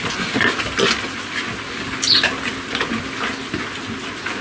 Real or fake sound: real